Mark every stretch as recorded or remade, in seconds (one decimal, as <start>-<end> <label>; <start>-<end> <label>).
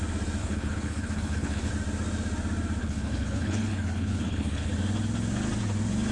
0.0-0.4 recorded; 0.4-1.7 remade; 1.7-2.8 recorded; 2.8-4.7 remade; 4.7-6.1 recorded